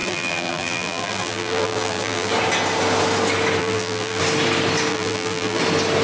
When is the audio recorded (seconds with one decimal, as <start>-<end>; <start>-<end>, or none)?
2.3-3.6; 4.2-4.9; 5.6-6.0